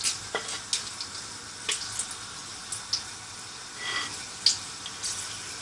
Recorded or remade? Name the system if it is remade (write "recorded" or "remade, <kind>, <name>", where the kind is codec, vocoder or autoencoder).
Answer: recorded